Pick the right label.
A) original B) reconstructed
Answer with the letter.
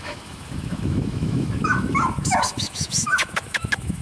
B